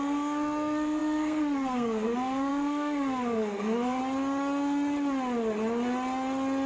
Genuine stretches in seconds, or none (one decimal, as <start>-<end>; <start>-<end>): 4.0-6.7